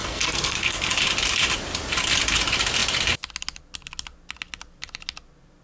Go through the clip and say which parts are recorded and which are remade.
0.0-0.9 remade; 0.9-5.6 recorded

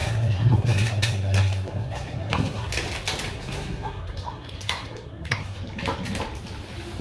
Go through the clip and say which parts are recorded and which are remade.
0.0-2.7 remade; 2.7-3.3 recorded; 3.3-5.6 remade; 5.6-7.0 recorded

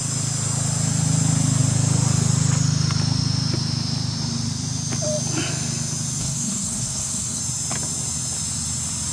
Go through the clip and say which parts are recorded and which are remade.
0.0-6.2 recorded; 6.2-7.4 remade; 7.4-9.1 recorded

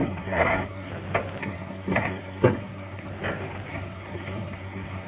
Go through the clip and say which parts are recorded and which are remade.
0.0-0.9 remade; 0.9-1.4 recorded; 1.4-3.1 remade; 3.1-3.7 recorded; 3.7-5.1 remade

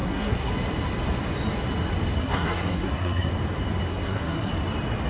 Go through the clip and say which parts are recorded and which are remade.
0.0-0.5 remade; 0.5-2.2 recorded; 2.2-3.3 remade; 3.3-3.9 recorded; 3.9-4.5 remade; 4.5-5.1 recorded

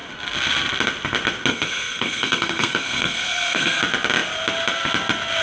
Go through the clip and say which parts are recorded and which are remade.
0.0-1.5 recorded; 1.5-3.8 remade; 3.8-5.4 recorded

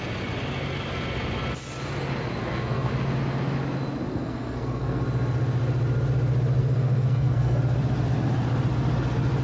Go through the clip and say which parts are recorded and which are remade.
0.0-2.4 recorded; 2.4-2.9 remade; 2.9-4.1 recorded; 4.1-5.0 remade; 5.0-6.6 recorded; 6.6-7.6 remade; 7.6-9.4 recorded

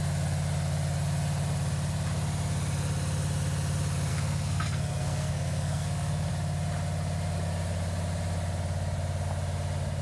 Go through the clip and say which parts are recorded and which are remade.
0.0-4.1 recorded; 4.1-6.3 remade; 6.3-10.0 recorded